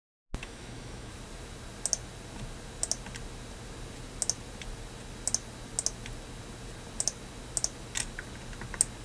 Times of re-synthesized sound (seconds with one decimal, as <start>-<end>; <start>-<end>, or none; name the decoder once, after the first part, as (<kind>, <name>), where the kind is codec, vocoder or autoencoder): 0.4-1.1 (autoencoder, DAC-VAE)